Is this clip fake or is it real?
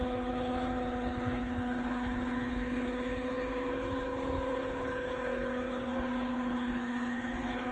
fake